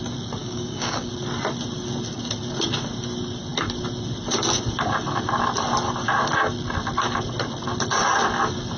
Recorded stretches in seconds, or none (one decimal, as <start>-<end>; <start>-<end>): 0.0-0.4; 1.1-8.8